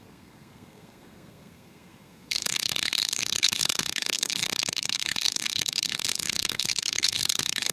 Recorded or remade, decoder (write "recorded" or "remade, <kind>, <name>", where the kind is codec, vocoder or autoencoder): remade, codec, SNAC